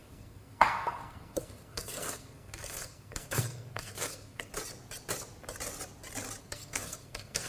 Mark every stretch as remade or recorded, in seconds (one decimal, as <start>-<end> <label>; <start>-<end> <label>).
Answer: 0.0-4.5 remade; 4.5-6.4 recorded; 6.4-7.5 remade